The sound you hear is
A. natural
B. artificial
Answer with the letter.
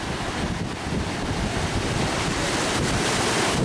A